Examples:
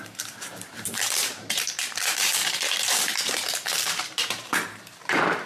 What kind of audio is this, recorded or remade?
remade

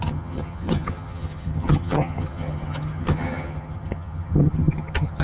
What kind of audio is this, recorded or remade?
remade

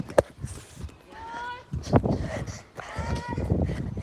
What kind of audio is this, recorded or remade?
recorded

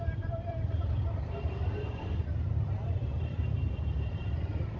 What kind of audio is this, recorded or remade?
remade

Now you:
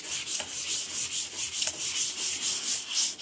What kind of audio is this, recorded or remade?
recorded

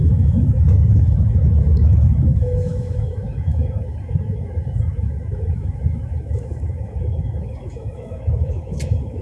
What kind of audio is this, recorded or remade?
remade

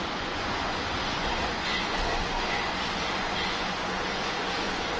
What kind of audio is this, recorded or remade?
remade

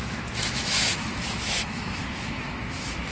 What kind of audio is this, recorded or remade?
remade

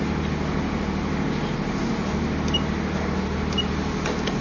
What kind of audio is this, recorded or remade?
recorded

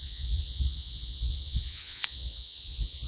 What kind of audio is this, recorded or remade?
remade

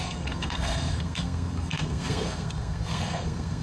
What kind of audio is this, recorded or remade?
remade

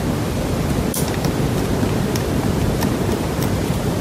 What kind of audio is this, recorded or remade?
recorded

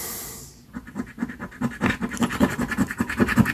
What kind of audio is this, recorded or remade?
recorded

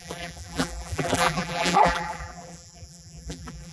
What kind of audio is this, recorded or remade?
remade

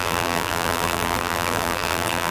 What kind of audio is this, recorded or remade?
remade